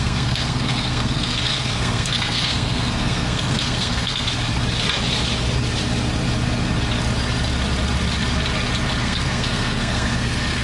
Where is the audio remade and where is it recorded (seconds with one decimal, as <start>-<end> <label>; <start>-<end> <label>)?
0.0-4.3 remade; 4.3-9.0 recorded; 9.0-10.6 remade